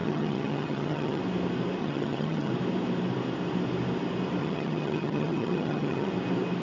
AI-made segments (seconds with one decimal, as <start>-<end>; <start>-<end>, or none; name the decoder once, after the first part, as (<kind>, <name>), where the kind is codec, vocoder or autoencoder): 0.0-1.2 (vocoder, HiFi-GAN); 1.8-2.5; 4.4-6.1